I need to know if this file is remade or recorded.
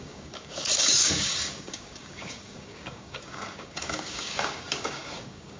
remade